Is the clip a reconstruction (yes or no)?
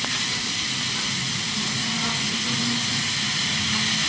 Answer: no